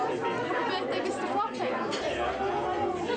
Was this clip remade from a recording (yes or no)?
no